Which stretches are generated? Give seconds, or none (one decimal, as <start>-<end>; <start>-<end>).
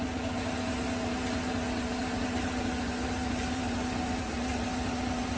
none